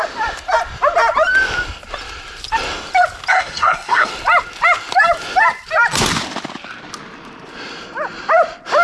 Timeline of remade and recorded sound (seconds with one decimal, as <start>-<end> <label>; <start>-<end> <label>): 0.0-3.3 recorded; 3.3-4.1 remade; 4.1-8.8 recorded